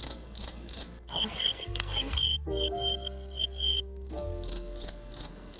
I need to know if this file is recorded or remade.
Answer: remade